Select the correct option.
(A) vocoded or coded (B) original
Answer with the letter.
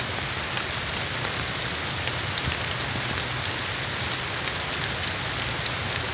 B